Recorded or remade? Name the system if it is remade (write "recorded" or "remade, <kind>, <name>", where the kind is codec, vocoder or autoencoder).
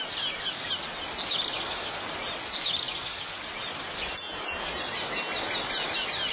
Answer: recorded